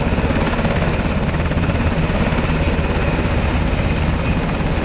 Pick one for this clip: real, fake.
real